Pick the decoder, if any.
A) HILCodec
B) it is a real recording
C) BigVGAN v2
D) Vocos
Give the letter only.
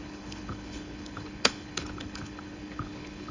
A